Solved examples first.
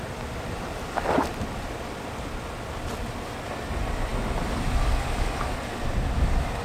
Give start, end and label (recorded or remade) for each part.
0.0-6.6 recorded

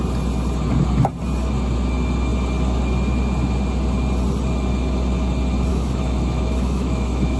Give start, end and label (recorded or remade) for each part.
0.0-5.7 recorded; 5.7-7.4 remade